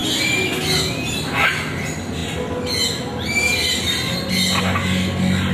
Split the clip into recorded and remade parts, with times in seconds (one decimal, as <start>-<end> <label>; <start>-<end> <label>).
0.0-5.5 recorded